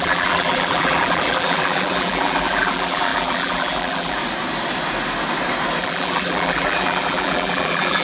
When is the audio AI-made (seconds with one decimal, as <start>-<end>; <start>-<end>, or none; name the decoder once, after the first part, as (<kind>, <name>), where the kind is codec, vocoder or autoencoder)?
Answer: 0.0-4.2 (vocoder, BigVGAN v2); 5.8-8.0